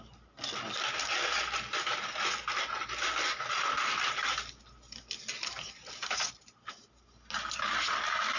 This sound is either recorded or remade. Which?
recorded